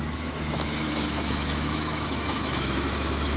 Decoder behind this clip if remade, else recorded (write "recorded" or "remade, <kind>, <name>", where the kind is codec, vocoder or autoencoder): remade, autoencoder, DAC-VAE